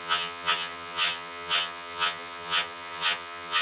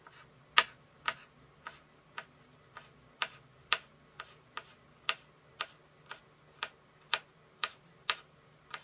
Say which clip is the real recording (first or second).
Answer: second